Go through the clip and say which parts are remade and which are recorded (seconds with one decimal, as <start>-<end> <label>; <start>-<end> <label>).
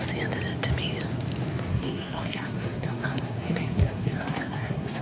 0.0-1.7 recorded; 1.7-5.0 remade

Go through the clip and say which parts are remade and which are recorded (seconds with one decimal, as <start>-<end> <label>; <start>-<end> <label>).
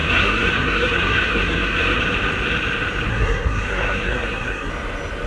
0.0-2.0 remade; 2.0-3.1 recorded; 3.1-4.7 remade; 4.7-5.3 recorded